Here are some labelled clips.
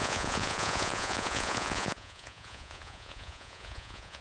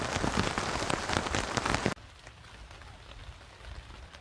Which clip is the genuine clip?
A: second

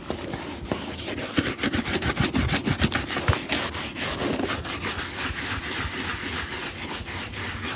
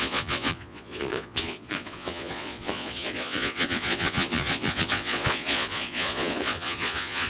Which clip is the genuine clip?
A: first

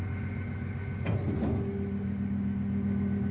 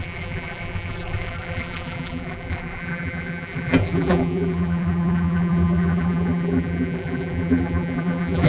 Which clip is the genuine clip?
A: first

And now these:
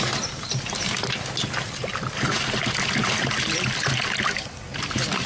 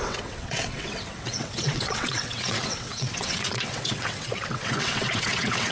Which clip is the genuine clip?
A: first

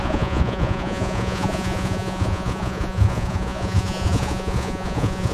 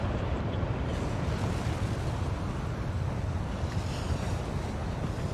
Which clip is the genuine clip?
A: second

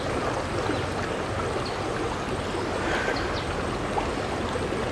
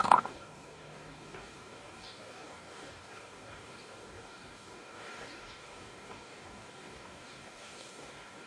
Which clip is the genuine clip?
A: first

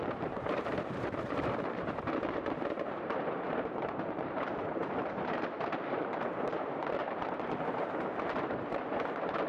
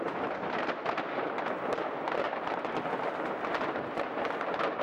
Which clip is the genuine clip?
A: second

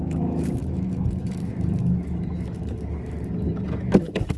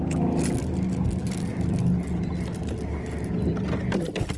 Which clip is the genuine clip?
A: second